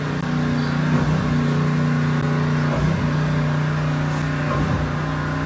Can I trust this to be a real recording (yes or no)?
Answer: yes